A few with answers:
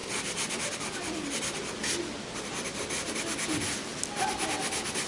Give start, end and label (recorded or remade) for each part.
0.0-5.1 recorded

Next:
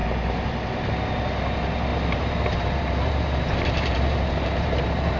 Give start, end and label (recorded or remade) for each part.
0.0-1.9 recorded; 1.9-5.2 remade

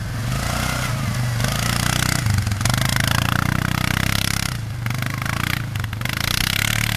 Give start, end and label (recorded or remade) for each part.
0.0-7.0 recorded

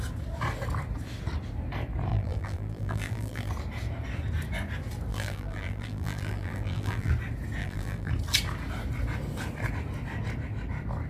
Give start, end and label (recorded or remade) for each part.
0.0-2.1 recorded; 2.1-3.5 remade; 3.5-5.1 recorded; 5.1-7.1 remade; 7.1-7.6 recorded; 7.6-8.1 remade; 8.1-11.1 recorded

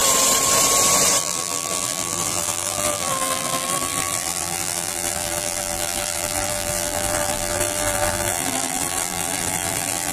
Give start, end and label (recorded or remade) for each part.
0.0-1.2 recorded; 1.2-10.1 remade

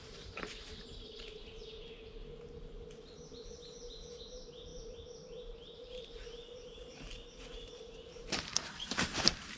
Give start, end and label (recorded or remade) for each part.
0.0-1.4 remade; 1.4-4.2 recorded; 4.2-9.6 remade